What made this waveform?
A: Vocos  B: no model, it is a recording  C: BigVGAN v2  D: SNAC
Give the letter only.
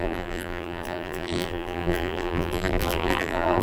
C